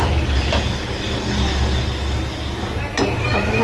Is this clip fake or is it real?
real